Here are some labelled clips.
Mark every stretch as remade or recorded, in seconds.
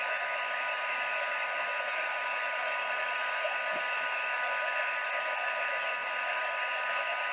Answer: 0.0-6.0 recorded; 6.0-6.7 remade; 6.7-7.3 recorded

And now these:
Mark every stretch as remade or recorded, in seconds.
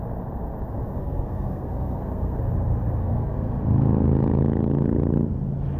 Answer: 0.0-1.0 recorded; 1.0-2.4 remade; 2.4-3.0 recorded; 3.0-3.5 remade; 3.5-5.8 recorded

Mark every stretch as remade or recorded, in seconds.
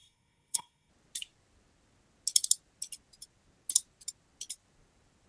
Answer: 0.0-0.9 remade; 0.9-5.3 recorded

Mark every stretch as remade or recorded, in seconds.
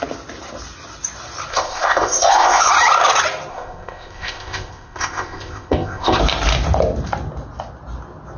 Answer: 0.0-1.5 recorded; 1.5-2.7 remade; 2.7-3.5 recorded; 3.5-6.2 remade; 6.2-8.4 recorded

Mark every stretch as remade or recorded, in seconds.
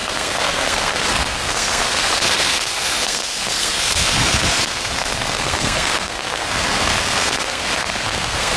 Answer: 0.0-8.6 remade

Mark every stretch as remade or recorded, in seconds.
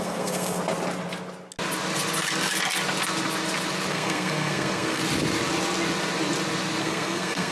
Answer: 0.0-0.6 remade; 0.6-3.9 recorded; 3.9-5.0 remade; 5.0-6.8 recorded; 6.8-7.5 remade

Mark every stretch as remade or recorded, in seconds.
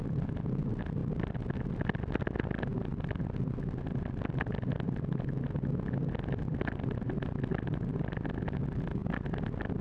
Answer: 0.0-9.8 recorded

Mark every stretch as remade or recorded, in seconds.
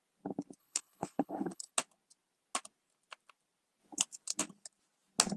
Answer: 0.0-0.6 recorded; 0.6-1.7 remade; 1.7-5.4 recorded